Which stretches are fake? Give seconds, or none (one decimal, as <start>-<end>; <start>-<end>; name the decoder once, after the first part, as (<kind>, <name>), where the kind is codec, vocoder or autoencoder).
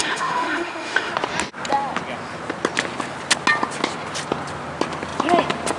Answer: 0.0-1.1 (autoencoder, DAC-VAE)